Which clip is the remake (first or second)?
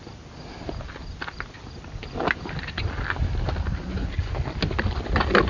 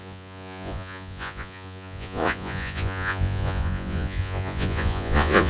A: second